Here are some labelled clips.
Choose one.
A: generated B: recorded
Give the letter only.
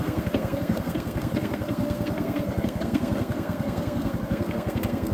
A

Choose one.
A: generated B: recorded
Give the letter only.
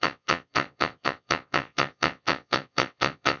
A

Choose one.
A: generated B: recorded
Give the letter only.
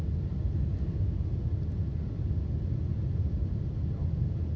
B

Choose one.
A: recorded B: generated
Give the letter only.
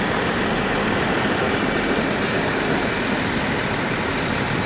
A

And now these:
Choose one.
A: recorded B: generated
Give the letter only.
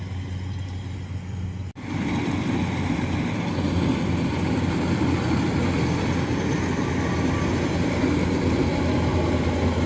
A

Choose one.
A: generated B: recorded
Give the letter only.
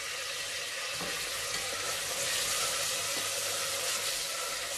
B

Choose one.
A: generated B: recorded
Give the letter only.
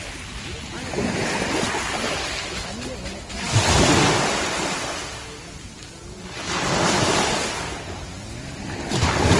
B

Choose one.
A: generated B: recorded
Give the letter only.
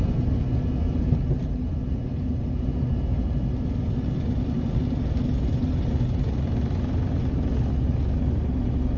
B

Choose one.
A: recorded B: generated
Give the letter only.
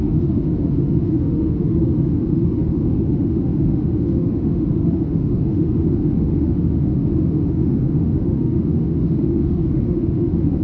B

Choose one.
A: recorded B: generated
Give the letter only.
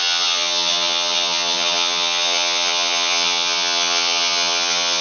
B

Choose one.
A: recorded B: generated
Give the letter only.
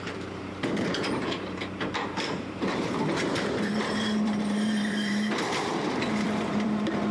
B